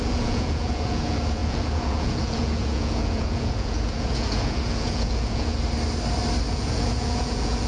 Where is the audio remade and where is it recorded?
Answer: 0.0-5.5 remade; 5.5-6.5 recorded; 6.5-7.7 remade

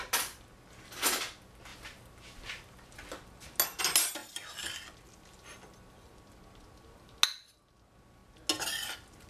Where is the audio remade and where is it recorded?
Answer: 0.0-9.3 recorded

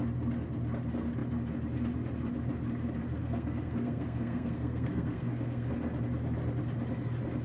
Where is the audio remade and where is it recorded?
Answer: 0.0-3.2 recorded; 3.2-5.7 remade; 5.7-7.4 recorded

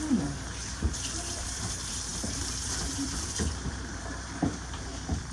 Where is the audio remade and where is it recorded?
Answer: 0.0-5.3 remade

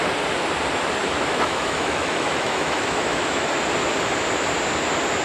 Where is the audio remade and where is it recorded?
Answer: 0.0-1.0 recorded; 1.0-3.6 remade; 3.6-5.2 recorded

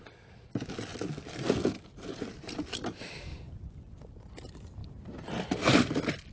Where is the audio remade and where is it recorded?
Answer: 0.0-3.3 recorded; 3.3-4.1 remade; 4.1-6.3 recorded

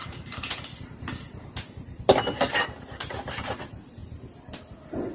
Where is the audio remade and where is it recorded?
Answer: 0.0-4.0 remade; 4.0-4.6 recorded; 4.6-5.1 remade